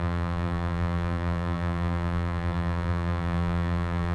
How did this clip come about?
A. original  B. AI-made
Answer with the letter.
B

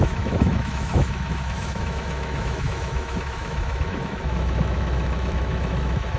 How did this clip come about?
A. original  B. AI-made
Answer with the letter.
B